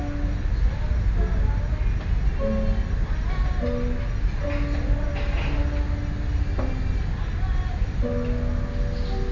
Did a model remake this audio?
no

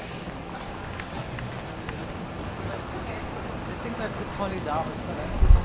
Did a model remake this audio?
no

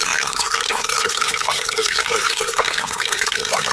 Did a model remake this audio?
yes